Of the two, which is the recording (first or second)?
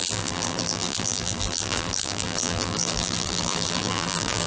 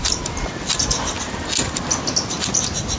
second